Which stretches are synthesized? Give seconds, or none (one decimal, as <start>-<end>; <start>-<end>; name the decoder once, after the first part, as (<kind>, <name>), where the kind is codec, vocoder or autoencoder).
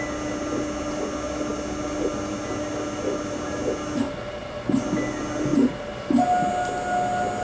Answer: none